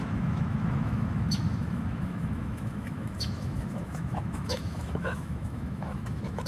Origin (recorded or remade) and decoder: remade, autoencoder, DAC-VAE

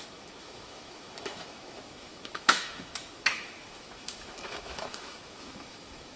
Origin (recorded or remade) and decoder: remade, autoencoder, DAC-VAE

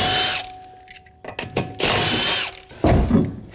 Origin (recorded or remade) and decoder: recorded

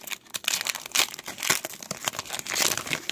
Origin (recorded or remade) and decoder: recorded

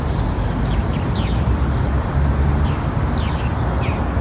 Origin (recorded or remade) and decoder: recorded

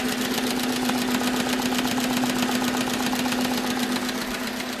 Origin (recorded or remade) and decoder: recorded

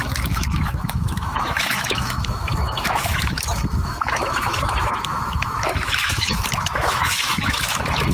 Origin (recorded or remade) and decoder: remade, autoencoder, DAC-VAE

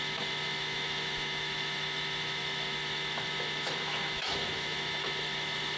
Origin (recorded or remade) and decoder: remade, autoencoder, DAC-VAE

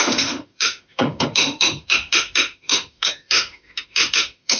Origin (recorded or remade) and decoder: remade, autoencoder, DAC-VAE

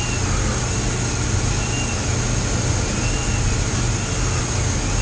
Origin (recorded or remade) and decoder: recorded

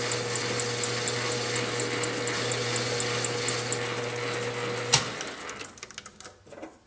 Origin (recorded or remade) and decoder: recorded